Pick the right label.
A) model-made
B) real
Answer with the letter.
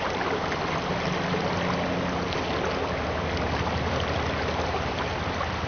B